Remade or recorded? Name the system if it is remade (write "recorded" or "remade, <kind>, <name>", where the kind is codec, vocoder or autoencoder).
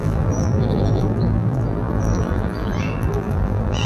remade, vocoder, BigVGAN v2